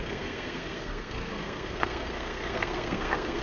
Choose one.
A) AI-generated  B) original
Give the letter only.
A